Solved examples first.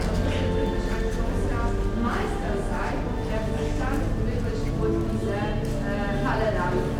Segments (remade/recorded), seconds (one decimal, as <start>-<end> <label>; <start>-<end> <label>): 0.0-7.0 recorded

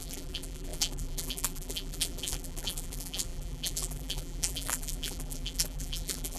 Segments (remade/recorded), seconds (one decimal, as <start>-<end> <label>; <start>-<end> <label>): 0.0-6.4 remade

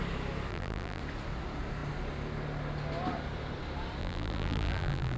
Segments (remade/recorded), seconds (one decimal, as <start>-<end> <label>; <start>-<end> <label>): 0.0-0.5 recorded; 0.5-1.0 remade; 1.0-4.0 recorded; 4.0-5.2 remade

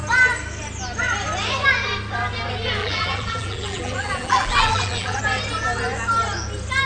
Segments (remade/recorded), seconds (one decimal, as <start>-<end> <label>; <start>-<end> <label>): 0.0-2.8 recorded; 2.8-5.2 remade; 5.2-6.9 recorded

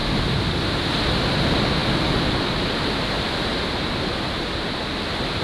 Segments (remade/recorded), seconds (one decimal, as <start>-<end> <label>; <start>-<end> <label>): 0.0-5.4 recorded